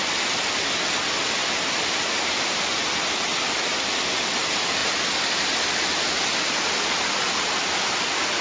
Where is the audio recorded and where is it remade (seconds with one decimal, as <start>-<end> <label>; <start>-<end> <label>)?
0.0-8.4 recorded